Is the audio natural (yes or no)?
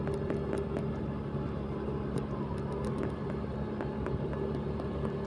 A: yes